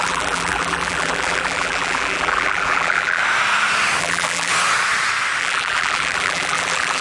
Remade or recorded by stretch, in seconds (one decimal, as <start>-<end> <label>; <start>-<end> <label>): 0.0-3.2 remade; 3.2-4.0 recorded; 4.0-4.5 remade; 4.5-5.4 recorded; 5.4-7.0 remade